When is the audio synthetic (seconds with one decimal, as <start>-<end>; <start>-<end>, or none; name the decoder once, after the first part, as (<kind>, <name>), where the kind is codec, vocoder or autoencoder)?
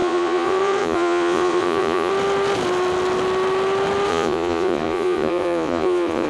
0.0-2.1 (vocoder, Vocos); 4.1-6.3